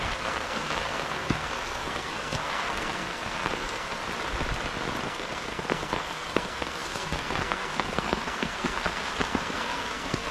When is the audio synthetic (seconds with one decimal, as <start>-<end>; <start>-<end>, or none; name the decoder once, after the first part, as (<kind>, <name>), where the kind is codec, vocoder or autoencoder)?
0.0-4.0 (codec, SNAC); 5.0-10.3